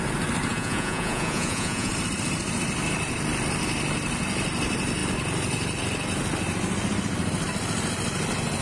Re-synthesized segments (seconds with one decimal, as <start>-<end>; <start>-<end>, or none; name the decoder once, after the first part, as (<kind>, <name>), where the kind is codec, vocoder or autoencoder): 0.5-1.9 (vocoder, Vocos)